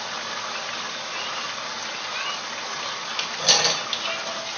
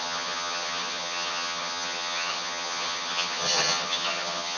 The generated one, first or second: second